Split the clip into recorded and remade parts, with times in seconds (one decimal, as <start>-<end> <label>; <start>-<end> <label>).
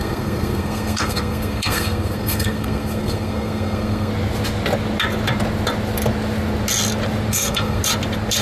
0.0-4.1 remade; 4.1-7.3 recorded; 7.3-7.8 remade; 7.8-8.4 recorded